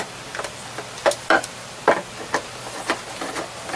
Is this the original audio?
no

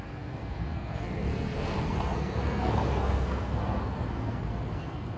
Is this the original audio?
no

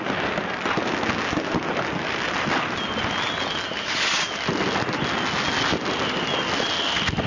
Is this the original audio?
yes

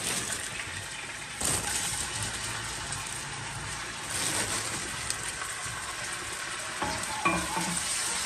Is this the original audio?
yes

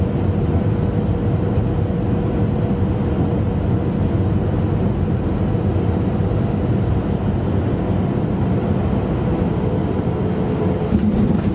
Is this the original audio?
yes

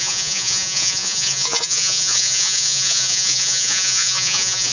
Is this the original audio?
no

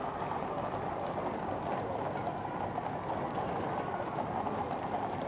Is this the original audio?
yes